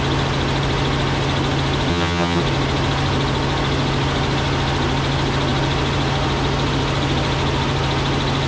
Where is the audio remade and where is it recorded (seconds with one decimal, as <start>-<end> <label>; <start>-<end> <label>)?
0.0-1.9 recorded; 1.9-2.4 remade; 2.4-8.5 recorded